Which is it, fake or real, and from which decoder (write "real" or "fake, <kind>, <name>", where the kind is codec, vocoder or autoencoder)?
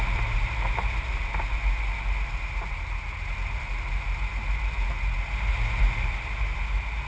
real